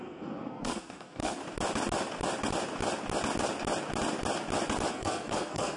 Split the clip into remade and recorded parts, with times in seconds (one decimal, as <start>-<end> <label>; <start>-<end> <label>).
0.0-1.4 remade; 1.4-4.9 recorded; 4.9-5.8 remade